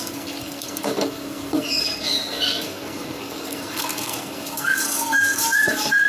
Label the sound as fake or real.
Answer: fake